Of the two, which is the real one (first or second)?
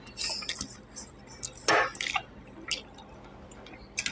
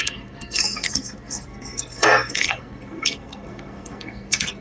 first